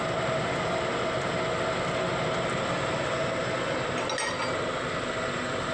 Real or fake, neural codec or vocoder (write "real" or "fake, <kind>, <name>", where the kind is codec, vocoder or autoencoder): real